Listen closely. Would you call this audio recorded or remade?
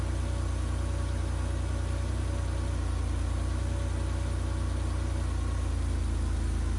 recorded